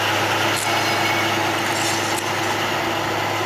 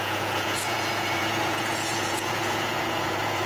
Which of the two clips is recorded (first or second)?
first